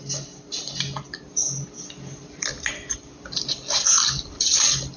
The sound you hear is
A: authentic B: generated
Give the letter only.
A